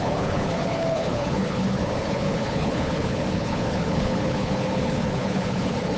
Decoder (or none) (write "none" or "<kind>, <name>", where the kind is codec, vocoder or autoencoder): codec, HILCodec